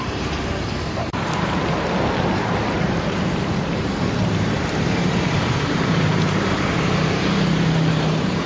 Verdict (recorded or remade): remade